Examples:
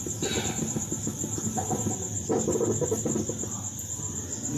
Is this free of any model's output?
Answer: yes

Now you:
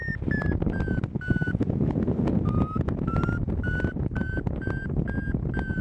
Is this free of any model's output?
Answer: yes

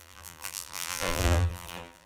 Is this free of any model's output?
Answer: no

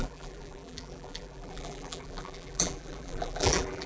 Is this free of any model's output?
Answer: no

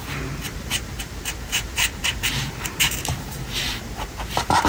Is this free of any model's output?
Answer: no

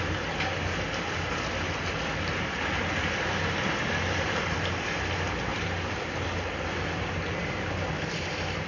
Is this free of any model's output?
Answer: yes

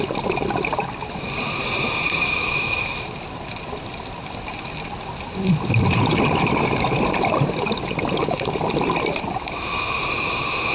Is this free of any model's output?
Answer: no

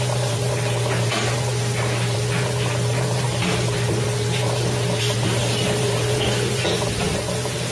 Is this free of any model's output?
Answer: no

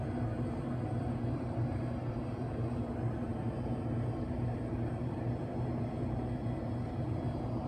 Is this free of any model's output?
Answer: no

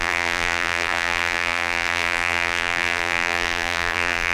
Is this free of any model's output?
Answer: no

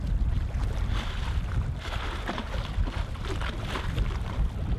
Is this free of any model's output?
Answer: yes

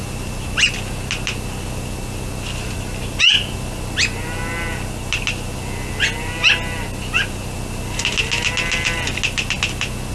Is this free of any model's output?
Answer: yes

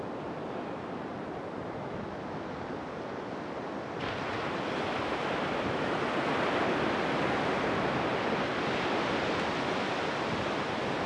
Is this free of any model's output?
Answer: yes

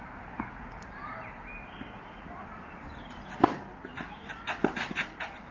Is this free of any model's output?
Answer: yes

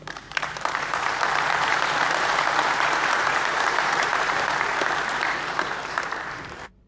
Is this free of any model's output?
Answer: no